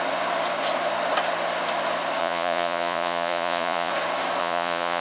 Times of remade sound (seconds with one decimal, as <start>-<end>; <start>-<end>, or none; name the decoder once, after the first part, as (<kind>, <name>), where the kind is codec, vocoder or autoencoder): 2.2-3.9 (vocoder, Vocos); 4.4-5.0